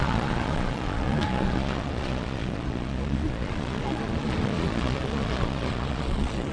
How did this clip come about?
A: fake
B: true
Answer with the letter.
A